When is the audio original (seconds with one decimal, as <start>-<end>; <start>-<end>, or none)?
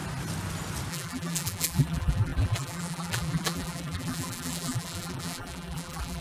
0.0-0.9